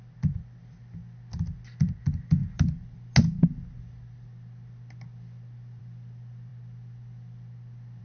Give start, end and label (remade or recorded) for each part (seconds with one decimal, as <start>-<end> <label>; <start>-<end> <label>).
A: 0.0-8.0 recorded